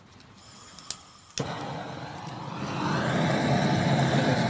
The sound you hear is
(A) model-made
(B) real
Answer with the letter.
B